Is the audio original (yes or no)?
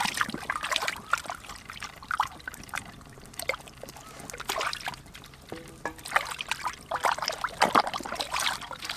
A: yes